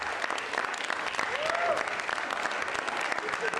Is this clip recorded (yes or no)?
yes